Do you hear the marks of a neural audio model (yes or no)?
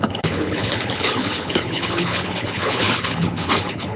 yes